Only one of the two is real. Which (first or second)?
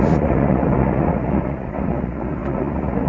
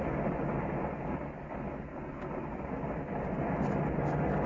second